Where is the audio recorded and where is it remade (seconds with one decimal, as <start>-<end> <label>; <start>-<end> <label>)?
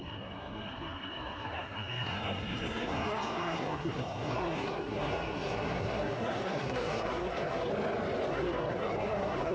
0.0-7.7 remade; 7.7-8.3 recorded; 8.3-9.5 remade